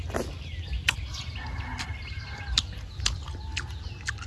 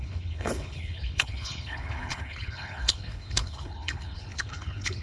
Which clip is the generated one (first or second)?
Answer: second